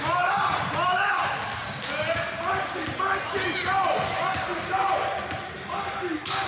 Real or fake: real